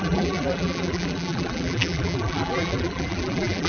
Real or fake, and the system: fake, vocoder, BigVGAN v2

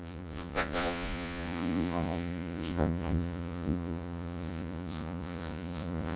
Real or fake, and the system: fake, vocoder, Vocos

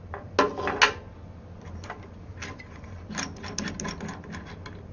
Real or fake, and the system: real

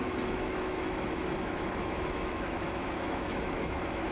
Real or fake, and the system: fake, autoencoder, DAC-VAE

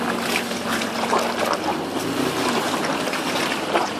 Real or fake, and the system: real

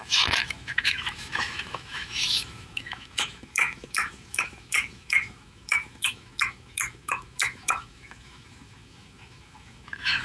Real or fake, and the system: fake, autoencoder, DAC-VAE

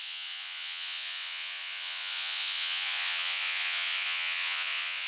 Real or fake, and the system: fake, vocoder, Vocos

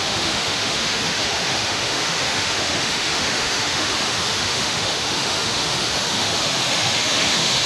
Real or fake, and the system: fake, autoencoder, DAC-VAE